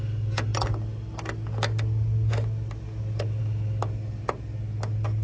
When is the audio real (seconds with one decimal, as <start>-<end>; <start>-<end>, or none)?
0.0-5.2